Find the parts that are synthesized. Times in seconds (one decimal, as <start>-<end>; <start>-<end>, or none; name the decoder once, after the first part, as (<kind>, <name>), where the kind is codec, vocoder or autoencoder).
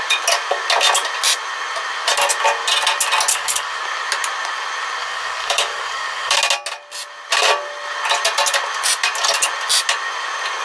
3.3-3.8 (codec, DAC); 5.0-6.4